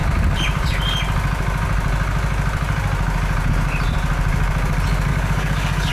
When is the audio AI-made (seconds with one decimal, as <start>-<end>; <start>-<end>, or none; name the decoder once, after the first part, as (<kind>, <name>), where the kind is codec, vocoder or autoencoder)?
5.1-5.9 (codec, DAC)